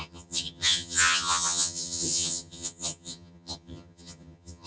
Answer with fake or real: fake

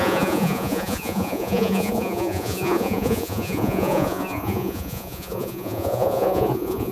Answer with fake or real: fake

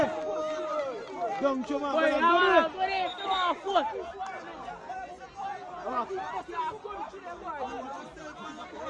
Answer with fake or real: real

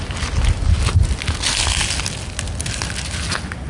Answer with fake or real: real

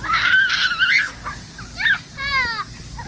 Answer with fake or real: real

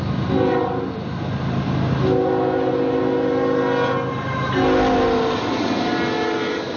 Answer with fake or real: real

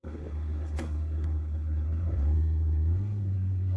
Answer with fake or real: fake